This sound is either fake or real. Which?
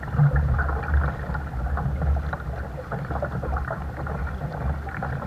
real